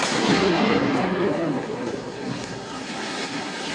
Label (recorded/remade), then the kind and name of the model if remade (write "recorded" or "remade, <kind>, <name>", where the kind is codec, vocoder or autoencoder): remade, codec, SNAC